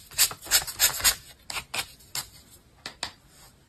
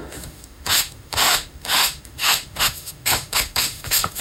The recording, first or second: first